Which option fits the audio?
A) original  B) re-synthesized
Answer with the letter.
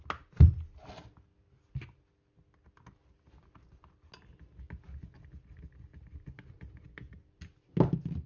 A